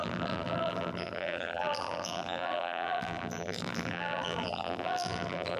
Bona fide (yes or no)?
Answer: no